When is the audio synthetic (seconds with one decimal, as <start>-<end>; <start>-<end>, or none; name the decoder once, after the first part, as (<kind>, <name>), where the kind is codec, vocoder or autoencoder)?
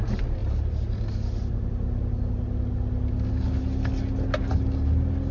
none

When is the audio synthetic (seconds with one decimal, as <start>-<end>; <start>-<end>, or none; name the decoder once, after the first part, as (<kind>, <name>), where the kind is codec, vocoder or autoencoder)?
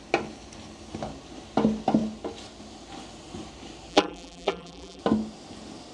3.9-5.0 (vocoder, BigVGAN v2)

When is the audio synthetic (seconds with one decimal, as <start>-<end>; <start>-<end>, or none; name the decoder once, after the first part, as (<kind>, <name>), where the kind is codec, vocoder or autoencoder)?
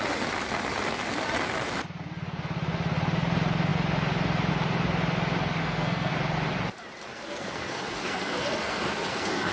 5.6-6.1 (codec, SNAC); 7.1-9.5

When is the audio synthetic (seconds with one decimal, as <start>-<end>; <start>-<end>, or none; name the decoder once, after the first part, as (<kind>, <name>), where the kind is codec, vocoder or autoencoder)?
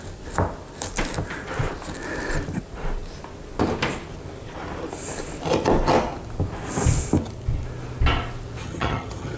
8.6-9.4 (vocoder, HiFi-GAN)